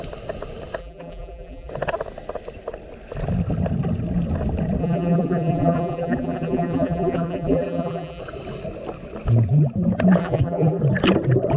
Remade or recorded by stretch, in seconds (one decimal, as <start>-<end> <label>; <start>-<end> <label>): 0.0-0.8 recorded; 0.8-1.7 remade; 1.7-4.8 recorded; 4.8-8.2 remade; 8.2-10.2 recorded; 10.2-10.8 remade; 10.8-11.6 recorded